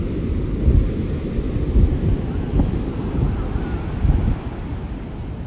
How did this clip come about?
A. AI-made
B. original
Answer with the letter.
B